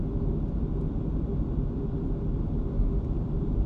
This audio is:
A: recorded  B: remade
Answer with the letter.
A